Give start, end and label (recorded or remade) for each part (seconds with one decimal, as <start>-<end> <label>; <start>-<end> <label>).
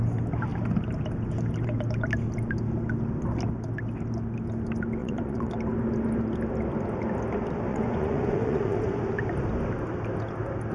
0.0-5.0 recorded; 5.0-5.5 remade; 5.5-7.7 recorded; 7.7-9.0 remade; 9.0-10.7 recorded